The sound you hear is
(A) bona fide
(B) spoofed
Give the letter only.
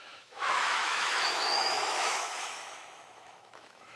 B